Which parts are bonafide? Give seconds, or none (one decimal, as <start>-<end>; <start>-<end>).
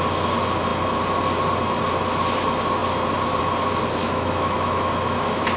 0.0-4.0